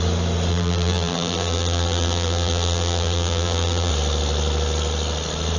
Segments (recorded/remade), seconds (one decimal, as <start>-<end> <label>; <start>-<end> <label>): 0.0-0.5 recorded; 0.5-3.9 remade; 3.9-5.6 recorded